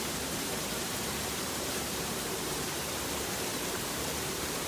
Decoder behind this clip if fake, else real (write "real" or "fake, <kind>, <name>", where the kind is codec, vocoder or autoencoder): fake, vocoder, BigVGAN v2